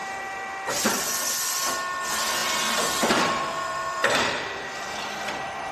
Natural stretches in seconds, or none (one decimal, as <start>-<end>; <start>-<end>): 1.1-2.4; 5.0-5.7